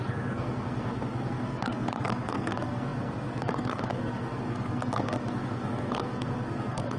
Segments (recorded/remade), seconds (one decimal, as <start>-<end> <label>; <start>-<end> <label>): 0.0-7.0 remade

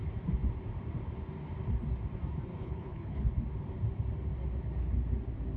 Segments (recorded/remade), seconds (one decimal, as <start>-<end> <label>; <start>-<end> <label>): 0.0-2.6 recorded; 2.6-3.3 remade; 3.3-5.6 recorded